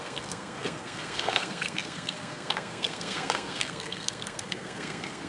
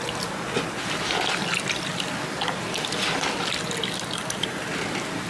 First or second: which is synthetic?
first